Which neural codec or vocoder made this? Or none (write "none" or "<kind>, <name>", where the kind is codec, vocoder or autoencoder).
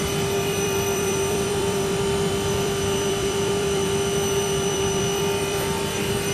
vocoder, BigVGAN v2